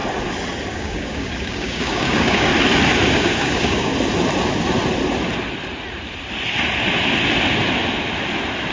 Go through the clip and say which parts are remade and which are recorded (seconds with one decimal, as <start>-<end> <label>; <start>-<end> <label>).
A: 0.0-0.7 recorded; 0.7-2.5 remade; 2.5-3.1 recorded; 3.1-3.9 remade; 3.9-8.7 recorded